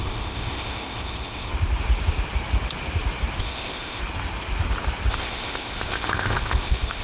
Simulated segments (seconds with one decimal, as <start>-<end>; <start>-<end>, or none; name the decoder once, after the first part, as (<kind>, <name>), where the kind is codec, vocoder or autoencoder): 0.0-1.5 (codec, ZipCodec); 3.4-4.0; 5.1-7.0